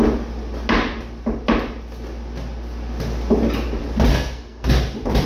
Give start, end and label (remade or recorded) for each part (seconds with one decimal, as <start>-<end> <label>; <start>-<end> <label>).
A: 0.0-4.1 recorded; 4.1-4.7 remade; 4.7-5.3 recorded